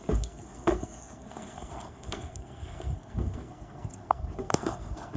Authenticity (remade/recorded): remade